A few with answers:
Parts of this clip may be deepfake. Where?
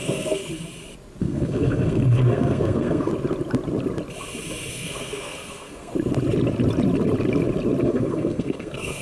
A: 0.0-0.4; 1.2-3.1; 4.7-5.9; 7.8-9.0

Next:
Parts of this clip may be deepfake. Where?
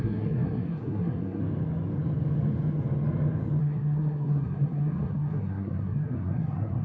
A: 0.0-1.4; 3.6-6.8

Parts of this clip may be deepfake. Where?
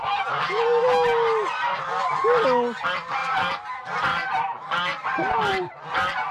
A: none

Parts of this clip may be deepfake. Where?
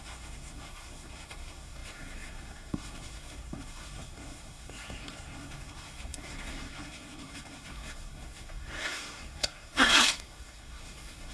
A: 0.0-11.3